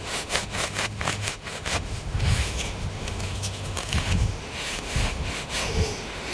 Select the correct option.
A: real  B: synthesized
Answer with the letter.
B